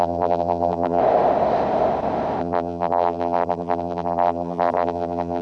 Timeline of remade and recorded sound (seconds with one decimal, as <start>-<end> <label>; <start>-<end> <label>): 0.0-1.0 remade; 1.0-2.4 recorded; 2.4-5.4 remade